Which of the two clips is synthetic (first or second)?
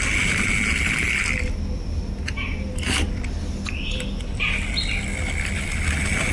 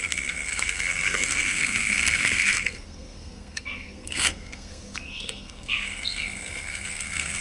second